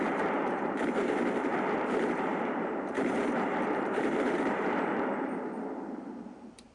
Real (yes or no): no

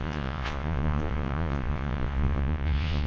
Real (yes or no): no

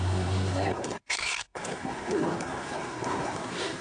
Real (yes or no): no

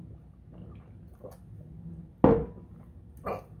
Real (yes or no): yes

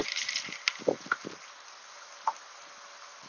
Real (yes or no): yes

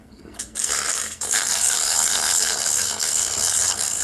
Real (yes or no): no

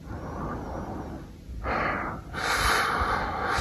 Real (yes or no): yes